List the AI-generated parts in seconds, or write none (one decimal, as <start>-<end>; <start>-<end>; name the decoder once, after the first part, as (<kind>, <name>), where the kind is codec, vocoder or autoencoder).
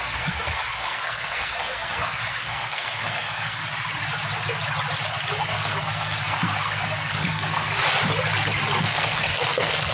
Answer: 0.0-3.6 (codec, SNAC); 5.4-7.7; 8.8-9.9